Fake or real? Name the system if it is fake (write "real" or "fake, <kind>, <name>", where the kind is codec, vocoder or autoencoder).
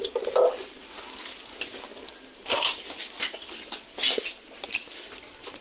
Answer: real